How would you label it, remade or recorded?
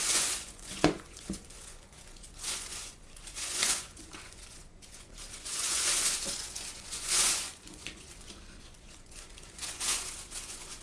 remade